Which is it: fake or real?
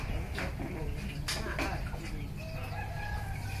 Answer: real